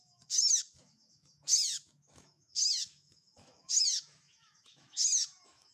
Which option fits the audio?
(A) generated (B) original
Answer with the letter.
A